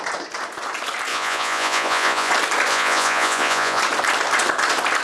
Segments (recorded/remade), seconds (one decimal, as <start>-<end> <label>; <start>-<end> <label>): 0.0-1.1 recorded; 1.1-2.3 remade; 2.3-2.7 recorded; 2.7-3.8 remade; 3.8-5.0 recorded